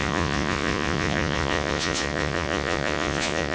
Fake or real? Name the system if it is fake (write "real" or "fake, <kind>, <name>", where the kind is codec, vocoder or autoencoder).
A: fake, vocoder, Vocos